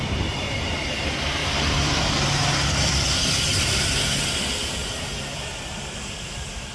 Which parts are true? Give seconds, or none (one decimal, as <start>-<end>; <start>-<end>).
0.0-6.7